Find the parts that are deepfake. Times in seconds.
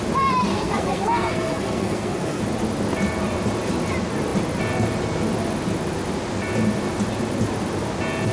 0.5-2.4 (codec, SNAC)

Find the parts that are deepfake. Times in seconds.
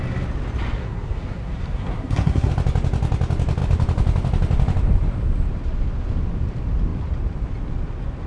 0.8-2.5 (codec, SNAC)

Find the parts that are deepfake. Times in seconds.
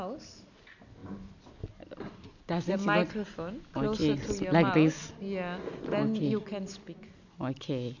none